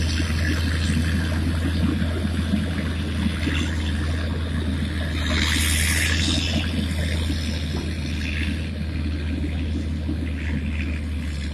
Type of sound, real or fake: real